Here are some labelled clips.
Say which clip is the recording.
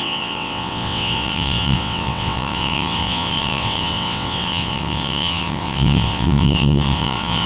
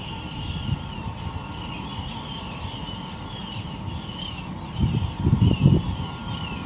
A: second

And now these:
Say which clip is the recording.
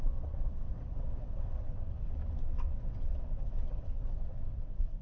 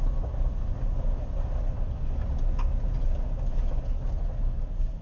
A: second